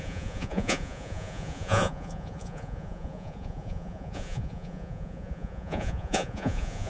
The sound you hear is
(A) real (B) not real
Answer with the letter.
B